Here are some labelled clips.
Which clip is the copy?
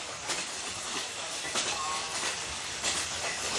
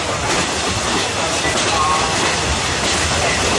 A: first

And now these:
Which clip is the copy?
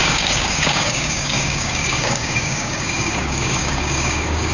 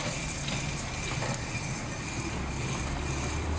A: first